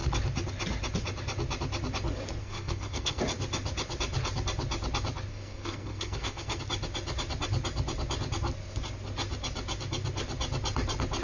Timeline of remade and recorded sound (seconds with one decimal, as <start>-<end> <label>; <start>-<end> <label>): 0.0-2.4 recorded; 2.4-3.2 remade; 3.2-5.3 recorded; 5.3-6.6 remade; 6.6-11.2 recorded